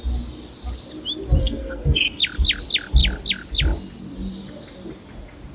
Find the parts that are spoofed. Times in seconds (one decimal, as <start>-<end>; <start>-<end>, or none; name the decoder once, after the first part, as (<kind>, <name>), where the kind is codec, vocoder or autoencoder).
1.4-2.2 (codec, SNAC)